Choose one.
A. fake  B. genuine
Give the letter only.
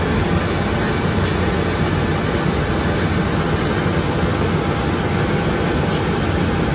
B